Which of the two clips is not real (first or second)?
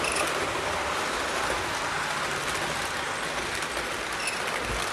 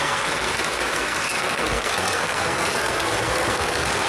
second